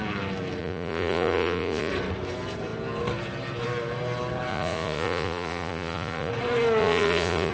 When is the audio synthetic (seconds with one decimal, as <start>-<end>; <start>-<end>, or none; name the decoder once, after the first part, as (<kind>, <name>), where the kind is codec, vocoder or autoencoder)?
0.6-1.9 (vocoder, Vocos); 4.5-6.3; 6.8-7.5